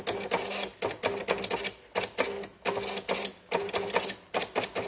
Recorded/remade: recorded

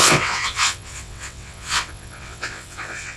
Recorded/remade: remade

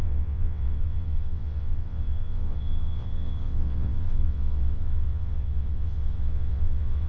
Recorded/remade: remade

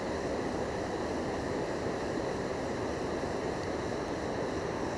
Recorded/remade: recorded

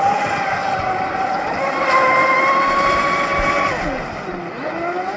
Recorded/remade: recorded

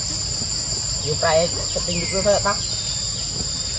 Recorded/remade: recorded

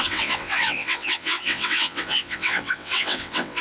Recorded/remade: remade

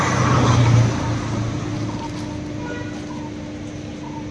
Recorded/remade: recorded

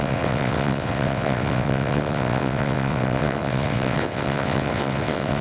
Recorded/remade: remade